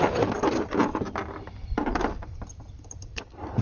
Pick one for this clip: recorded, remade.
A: recorded